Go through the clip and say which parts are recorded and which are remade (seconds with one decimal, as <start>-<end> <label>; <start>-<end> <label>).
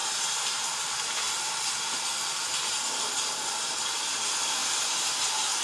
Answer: 0.0-0.8 remade; 0.8-4.6 recorded; 4.6-5.6 remade